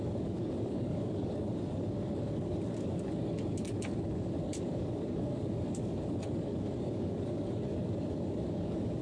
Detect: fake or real fake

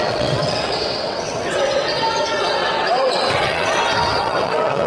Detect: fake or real fake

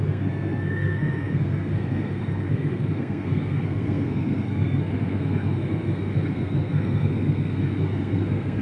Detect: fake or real fake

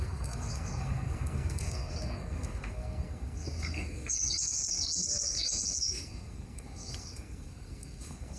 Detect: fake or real fake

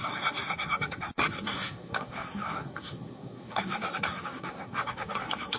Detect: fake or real fake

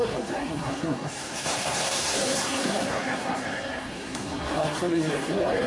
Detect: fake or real fake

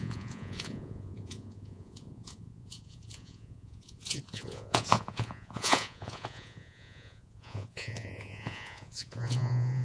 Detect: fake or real fake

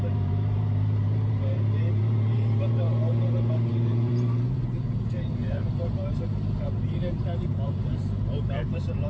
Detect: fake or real fake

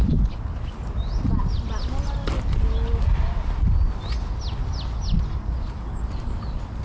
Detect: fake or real real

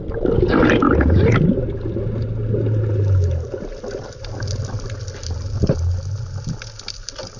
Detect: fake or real real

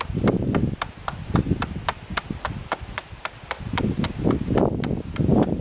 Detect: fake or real real